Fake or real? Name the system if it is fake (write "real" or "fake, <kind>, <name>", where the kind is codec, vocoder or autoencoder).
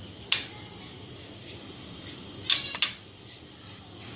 real